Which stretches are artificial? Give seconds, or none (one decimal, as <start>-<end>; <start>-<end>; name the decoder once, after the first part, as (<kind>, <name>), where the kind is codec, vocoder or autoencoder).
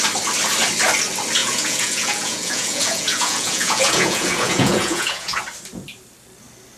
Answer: 1.4-5.4 (vocoder, Vocos)